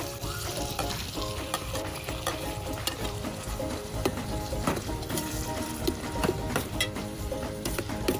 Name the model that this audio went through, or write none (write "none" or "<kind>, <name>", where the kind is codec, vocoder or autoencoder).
vocoder, BigVGAN v2